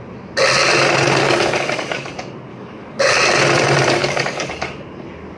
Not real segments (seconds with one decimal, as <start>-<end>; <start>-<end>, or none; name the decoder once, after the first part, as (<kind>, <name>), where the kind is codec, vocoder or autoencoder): 1.2-2.1 (codec, DAC); 2.5-3.1; 4.0-4.5